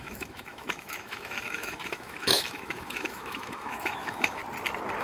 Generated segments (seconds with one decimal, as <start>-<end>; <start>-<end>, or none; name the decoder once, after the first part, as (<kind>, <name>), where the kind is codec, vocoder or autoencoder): 0.0-4.4 (autoencoder, DAC-VAE)